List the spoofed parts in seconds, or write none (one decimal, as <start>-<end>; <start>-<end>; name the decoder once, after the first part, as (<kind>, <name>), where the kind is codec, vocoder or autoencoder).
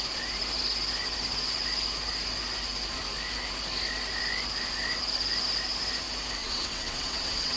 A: 6.4-7.6 (vocoder, WaveNeXt)